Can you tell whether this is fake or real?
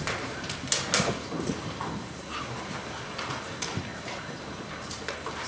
real